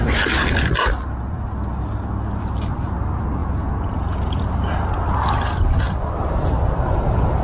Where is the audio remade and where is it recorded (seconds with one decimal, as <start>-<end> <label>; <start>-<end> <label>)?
0.0-3.4 recorded; 3.4-4.4 remade; 4.4-7.4 recorded